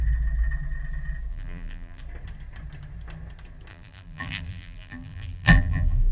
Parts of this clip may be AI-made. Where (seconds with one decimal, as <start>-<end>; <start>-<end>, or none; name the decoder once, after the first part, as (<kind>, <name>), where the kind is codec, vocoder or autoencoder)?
1.3-2.0 (vocoder, BigVGAN v2); 3.7-6.1

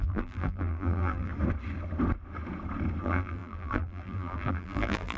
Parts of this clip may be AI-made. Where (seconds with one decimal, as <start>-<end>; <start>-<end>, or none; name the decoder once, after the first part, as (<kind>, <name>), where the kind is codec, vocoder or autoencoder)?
0.0-1.3 (vocoder, BigVGAN v2); 3.0-5.2

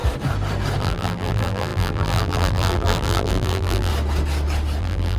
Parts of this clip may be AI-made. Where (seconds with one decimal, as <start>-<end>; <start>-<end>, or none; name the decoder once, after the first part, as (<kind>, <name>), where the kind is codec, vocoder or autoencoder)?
0.8-3.9 (vocoder, BigVGAN v2); 4.8-5.2

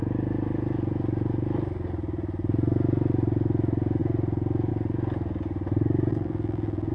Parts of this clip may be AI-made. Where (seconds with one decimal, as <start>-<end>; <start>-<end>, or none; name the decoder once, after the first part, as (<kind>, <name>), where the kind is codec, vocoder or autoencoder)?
6.1-6.9 (vocoder, BigVGAN v2)

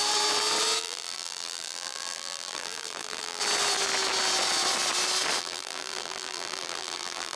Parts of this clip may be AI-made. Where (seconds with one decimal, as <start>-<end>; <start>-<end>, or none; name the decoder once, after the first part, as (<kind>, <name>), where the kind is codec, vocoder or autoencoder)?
0.8-3.4 (vocoder, BigVGAN v2); 5.4-7.4

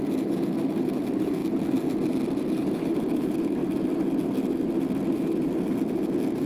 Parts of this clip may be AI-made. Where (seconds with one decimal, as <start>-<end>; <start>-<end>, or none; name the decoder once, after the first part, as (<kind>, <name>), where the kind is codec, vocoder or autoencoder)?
0.0-1.4 (vocoder, BigVGAN v2); 2.1-3.6